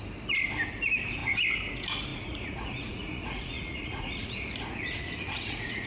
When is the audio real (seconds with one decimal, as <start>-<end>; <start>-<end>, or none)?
0.0-2.1

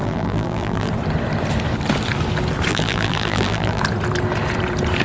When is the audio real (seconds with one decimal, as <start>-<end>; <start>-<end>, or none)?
0.9-2.7; 3.8-5.0